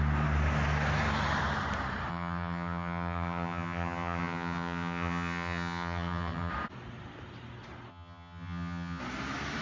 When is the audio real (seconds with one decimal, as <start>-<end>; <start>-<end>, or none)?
0.0-2.1; 6.5-7.9; 9.0-9.6